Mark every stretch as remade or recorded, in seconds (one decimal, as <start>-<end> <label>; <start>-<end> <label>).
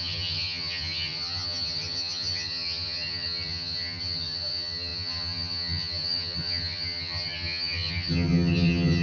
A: 0.0-9.0 remade